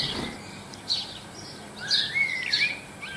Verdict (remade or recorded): recorded